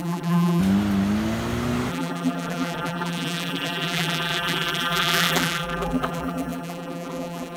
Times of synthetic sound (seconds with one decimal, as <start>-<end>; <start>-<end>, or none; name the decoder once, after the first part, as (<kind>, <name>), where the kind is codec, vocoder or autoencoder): 0.0-0.6 (vocoder, BigVGAN v2); 1.9-7.6